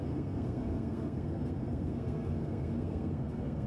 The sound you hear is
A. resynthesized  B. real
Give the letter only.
A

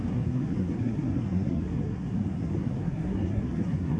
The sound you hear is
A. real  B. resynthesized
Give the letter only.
B